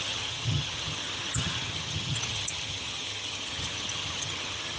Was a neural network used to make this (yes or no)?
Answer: yes